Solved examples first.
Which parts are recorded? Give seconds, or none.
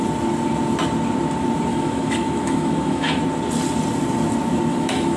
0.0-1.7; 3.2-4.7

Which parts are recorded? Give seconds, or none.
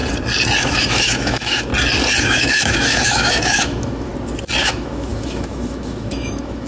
0.0-0.6; 1.7-2.2; 4.1-4.6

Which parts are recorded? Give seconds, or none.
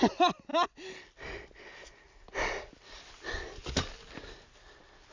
0.0-5.1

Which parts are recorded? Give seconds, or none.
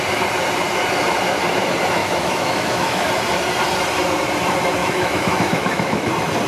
0.0-2.0; 3.1-4.8; 6.1-6.5